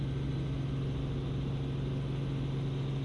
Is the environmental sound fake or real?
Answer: real